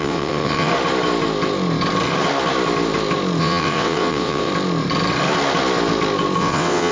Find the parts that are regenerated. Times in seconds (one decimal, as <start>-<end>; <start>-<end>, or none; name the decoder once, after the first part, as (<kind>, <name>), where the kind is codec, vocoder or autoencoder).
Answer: 0.0-0.7 (vocoder, WaveNeXt); 3.4-4.5; 6.4-6.9